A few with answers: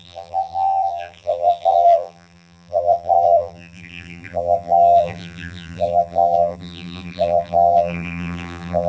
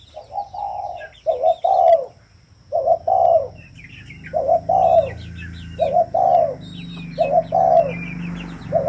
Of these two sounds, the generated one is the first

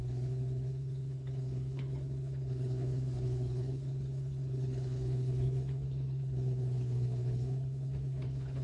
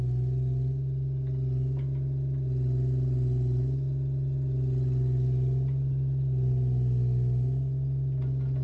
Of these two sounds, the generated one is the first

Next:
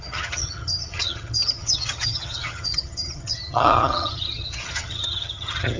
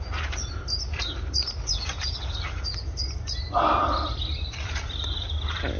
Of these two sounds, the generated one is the first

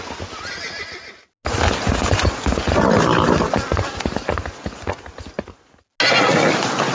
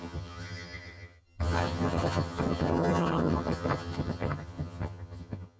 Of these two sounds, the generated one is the second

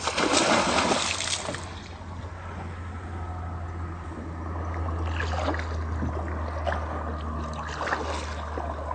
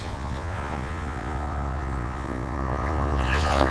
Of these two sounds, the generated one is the second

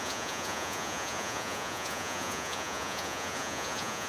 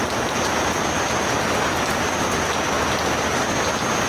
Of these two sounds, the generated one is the first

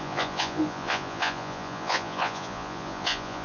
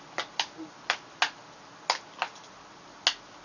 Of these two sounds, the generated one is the first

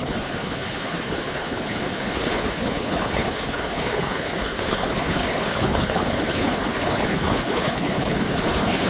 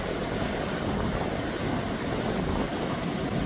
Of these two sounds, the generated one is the first